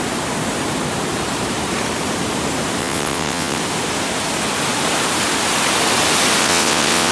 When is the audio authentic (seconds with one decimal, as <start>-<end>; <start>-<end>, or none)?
0.0-2.8; 3.6-6.4